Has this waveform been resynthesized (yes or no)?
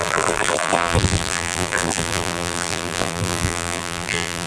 yes